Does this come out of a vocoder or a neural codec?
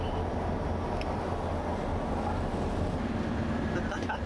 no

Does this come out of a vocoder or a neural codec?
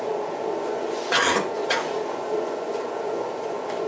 yes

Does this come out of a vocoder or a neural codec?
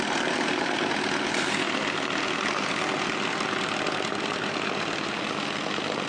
no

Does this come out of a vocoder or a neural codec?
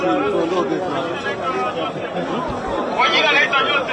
no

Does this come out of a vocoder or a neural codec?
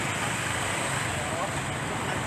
no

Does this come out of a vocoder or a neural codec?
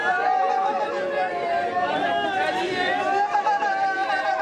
no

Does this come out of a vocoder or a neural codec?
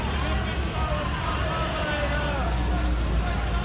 no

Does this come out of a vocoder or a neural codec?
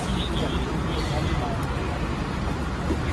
no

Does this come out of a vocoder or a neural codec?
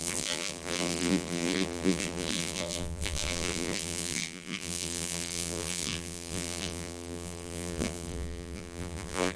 yes